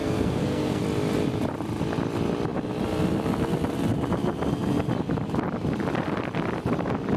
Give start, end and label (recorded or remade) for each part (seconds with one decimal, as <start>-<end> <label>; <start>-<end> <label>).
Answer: 0.0-0.8 remade; 0.8-7.2 recorded